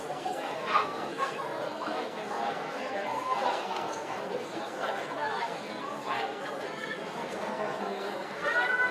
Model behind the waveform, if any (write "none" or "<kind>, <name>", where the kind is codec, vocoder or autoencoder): codec, SNAC